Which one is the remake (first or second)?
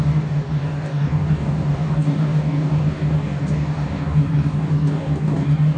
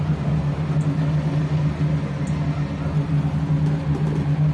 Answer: first